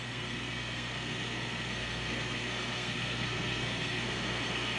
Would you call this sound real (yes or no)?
no